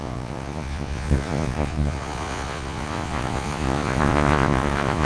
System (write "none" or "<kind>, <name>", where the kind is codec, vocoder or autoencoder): vocoder, Vocos